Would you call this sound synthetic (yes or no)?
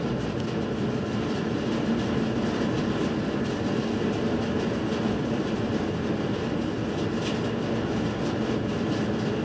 no